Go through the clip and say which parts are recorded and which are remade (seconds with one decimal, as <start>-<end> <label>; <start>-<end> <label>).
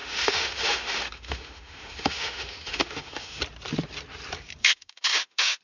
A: 0.0-3.4 remade; 3.4-4.6 recorded; 4.6-5.6 remade